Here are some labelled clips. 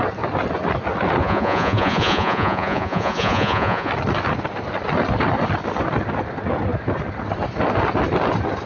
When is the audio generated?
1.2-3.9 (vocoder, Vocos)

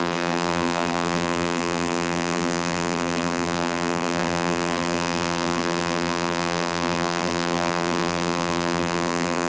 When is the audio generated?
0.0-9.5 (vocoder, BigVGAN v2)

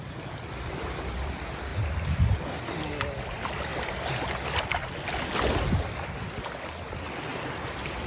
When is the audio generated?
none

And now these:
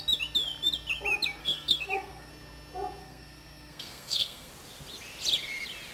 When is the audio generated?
1.4-2.3 (codec, SNAC); 3.0-4.5

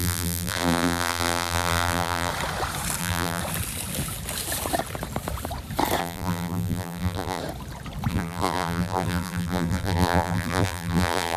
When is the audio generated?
0.0-2.3 (vocoder, BigVGAN v2); 3.0-3.4; 6.0-7.4; 8.1-11.4

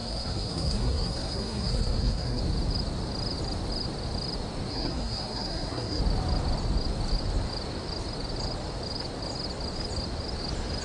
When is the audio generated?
0.0-2.4 (codec, SNAC); 4.7-6.0